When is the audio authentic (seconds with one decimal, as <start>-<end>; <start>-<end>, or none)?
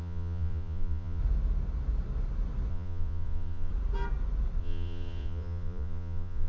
1.2-2.7; 3.7-4.6